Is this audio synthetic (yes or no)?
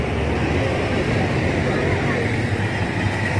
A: no